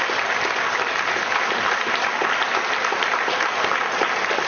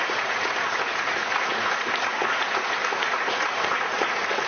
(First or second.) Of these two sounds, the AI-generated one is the second